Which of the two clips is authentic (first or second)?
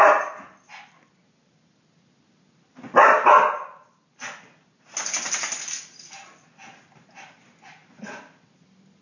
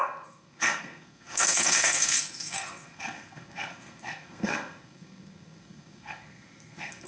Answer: first